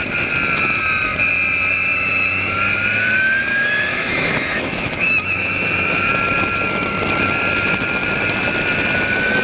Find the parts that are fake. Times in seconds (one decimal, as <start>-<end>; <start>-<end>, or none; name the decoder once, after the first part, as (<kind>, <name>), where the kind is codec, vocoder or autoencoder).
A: 3.5-6.1 (autoencoder, DAC-VAE)

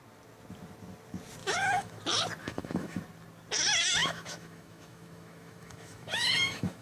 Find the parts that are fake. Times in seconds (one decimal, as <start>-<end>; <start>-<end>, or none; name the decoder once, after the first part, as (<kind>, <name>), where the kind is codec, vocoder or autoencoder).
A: 1.4-2.0 (autoencoder, DAC-VAE); 2.4-3.0; 4.0-6.8

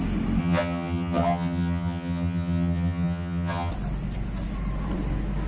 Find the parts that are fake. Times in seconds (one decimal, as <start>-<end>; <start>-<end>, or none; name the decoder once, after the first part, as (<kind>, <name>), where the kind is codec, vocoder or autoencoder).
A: 0.4-3.7 (vocoder, HiFi-GAN)

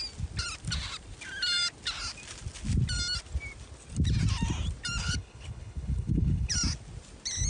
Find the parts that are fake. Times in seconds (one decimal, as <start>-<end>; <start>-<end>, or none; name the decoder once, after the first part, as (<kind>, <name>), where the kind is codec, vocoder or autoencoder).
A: 5.0-6.5 (codec, HILCodec)